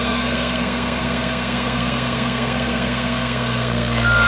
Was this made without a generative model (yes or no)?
no